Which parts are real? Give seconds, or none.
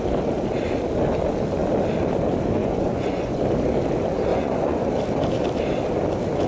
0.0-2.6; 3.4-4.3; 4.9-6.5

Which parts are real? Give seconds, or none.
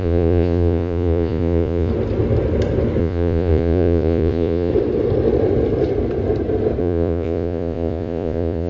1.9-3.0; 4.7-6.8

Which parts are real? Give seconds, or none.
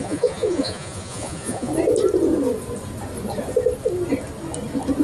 1.7-5.0